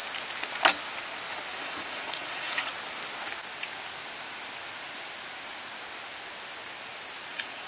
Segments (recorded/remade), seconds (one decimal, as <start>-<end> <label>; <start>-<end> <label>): 0.0-1.5 recorded; 1.5-2.7 remade; 2.7-7.3 recorded; 7.3-7.7 remade